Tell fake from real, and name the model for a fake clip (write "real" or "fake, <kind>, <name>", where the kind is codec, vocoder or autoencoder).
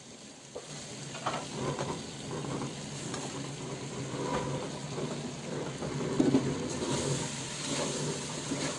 real